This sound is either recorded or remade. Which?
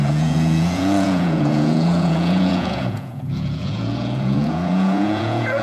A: remade